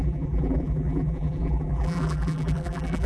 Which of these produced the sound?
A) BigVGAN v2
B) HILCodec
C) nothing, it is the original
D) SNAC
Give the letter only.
A